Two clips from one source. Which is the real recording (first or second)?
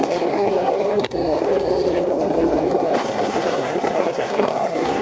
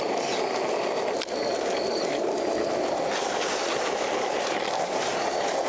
second